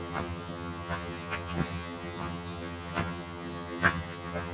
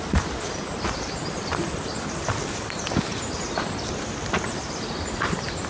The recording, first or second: second